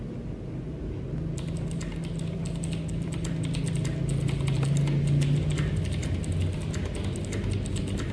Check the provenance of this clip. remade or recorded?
recorded